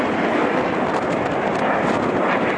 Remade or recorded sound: recorded